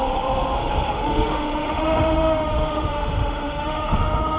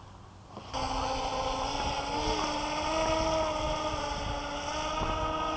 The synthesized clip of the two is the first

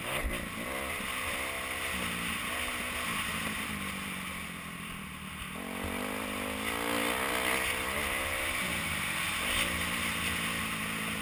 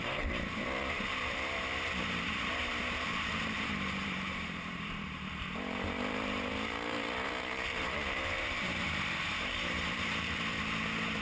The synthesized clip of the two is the second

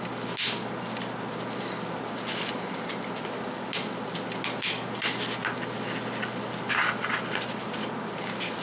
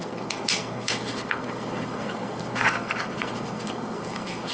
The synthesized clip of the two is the second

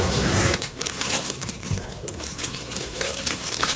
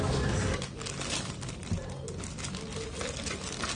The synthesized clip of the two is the first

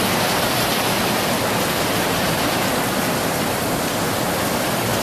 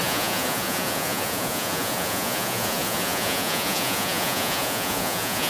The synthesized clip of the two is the second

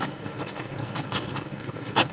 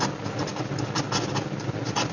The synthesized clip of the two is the first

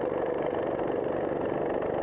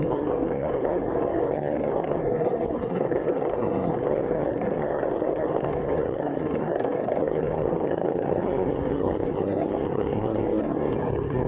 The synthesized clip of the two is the second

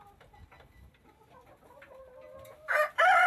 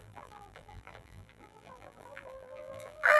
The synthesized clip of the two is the second